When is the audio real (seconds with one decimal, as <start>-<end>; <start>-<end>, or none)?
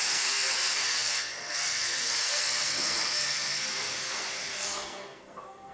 none